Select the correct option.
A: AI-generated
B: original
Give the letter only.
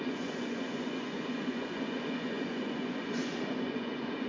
A